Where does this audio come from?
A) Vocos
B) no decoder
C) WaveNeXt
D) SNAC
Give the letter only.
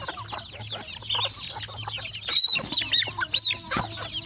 B